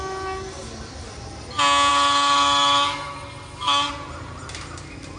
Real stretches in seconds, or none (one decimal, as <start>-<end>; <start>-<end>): 0.0-1.9; 3.9-5.2